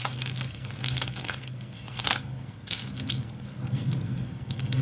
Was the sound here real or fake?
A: fake